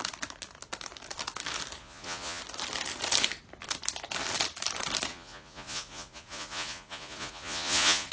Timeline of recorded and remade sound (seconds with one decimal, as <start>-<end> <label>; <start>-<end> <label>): 0.0-1.8 recorded; 1.8-2.4 remade; 2.4-5.1 recorded; 5.1-8.1 remade